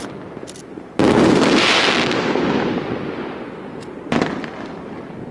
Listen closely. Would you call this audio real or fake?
real